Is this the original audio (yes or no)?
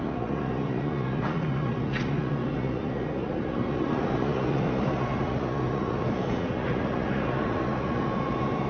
no